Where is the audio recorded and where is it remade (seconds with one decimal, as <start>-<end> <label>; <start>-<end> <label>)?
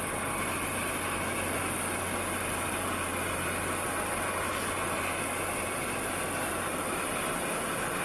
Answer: 0.0-8.0 recorded